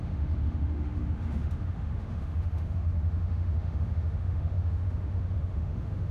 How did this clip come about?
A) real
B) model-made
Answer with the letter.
B